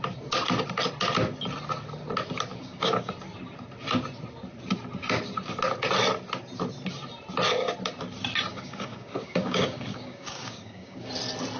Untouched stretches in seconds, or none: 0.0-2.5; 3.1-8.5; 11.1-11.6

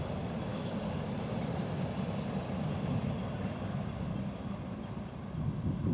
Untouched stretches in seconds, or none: 0.0-0.5; 1.1-5.9